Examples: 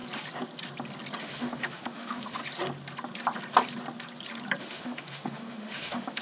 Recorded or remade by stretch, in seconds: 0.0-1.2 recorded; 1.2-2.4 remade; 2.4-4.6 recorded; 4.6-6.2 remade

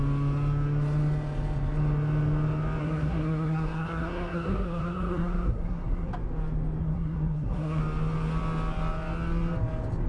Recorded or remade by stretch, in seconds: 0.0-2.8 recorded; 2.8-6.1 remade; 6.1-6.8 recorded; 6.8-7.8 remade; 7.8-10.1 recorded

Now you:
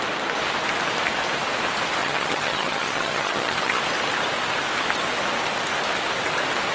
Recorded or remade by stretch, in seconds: 0.0-2.0 recorded; 2.0-3.8 remade; 3.8-6.7 recorded